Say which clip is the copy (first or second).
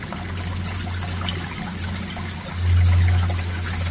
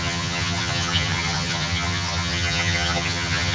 second